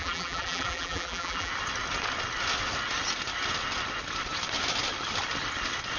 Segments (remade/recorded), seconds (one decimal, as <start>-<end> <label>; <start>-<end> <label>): 0.0-1.5 remade; 1.5-6.0 recorded